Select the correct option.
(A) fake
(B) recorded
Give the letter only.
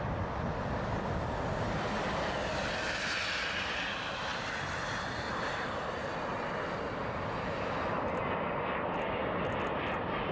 B